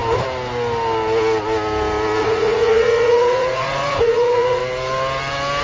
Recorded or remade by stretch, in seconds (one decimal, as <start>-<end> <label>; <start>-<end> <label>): 0.0-2.2 recorded; 2.2-4.6 remade; 4.6-5.6 recorded